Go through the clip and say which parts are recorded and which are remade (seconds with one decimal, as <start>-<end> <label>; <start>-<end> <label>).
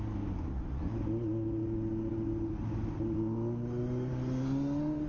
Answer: 0.0-5.1 recorded